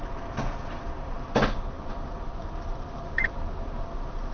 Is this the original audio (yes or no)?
yes